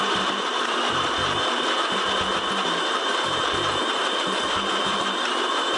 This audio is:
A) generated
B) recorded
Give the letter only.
A